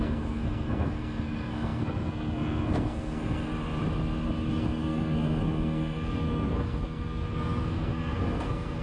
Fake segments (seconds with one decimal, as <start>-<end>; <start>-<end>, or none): 0.0-3.5; 4.5-8.8

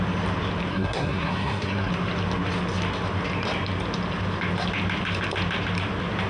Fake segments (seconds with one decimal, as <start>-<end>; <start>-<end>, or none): 0.7-1.9

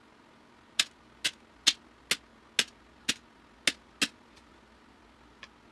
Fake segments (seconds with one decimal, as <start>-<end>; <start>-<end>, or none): none

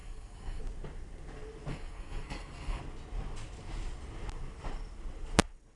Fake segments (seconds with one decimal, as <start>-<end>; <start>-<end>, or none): 0.0-0.6; 1.7-2.8

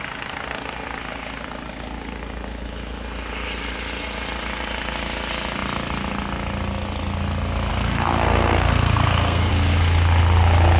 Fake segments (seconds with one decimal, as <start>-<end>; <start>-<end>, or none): 7.7-9.5

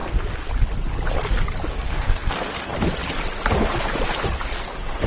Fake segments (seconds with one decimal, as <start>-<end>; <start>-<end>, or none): 1.7-2.7; 4.6-5.1

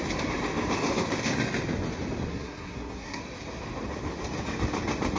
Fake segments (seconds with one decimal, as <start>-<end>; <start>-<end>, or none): 2.3-3.2

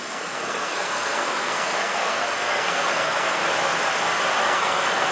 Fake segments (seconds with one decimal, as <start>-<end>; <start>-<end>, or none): 0.0-3.4; 4.4-5.1